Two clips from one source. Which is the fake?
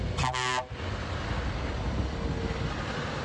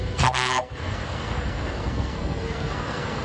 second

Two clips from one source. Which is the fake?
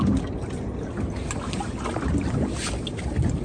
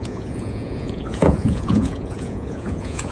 second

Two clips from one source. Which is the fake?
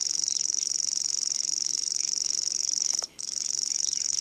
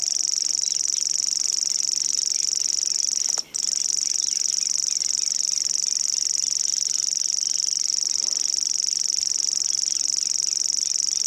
first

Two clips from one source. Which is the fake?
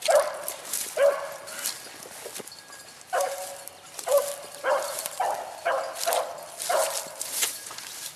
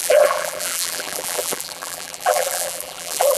second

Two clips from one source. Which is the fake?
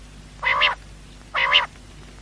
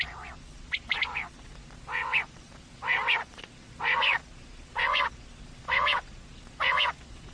second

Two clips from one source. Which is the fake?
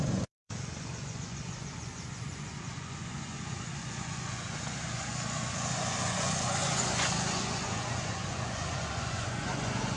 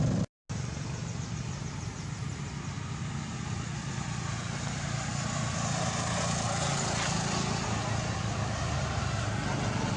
first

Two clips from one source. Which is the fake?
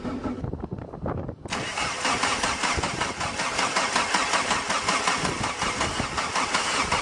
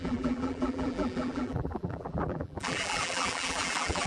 second